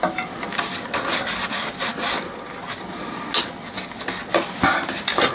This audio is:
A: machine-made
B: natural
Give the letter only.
B